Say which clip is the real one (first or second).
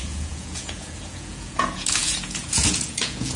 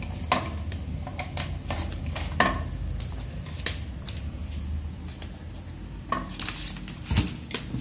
second